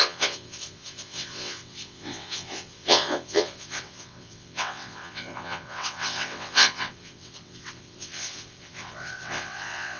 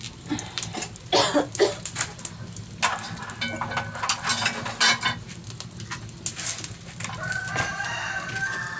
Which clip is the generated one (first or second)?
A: first